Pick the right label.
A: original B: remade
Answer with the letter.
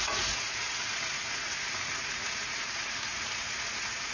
B